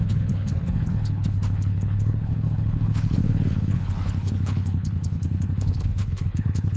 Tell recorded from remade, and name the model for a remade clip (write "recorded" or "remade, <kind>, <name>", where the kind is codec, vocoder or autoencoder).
remade, codec, HILCodec